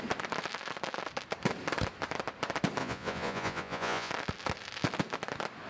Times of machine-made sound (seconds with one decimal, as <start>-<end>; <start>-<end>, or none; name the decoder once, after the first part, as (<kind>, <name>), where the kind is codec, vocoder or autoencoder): 2.8-4.1 (vocoder, Vocos)